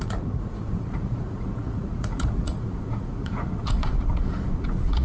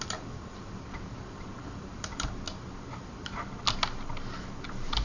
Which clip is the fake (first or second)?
first